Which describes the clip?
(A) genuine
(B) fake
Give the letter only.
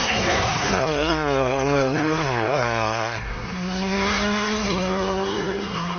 B